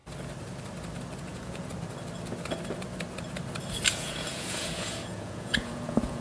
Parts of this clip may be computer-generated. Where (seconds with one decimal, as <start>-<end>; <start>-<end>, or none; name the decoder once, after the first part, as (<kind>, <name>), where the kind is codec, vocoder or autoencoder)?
1.2-1.7 (vocoder, Vocos); 3.9-6.2